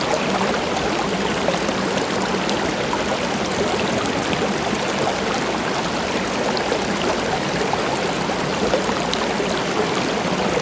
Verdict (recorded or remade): recorded